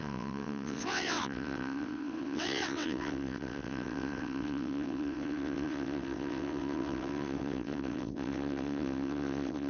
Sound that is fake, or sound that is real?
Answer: fake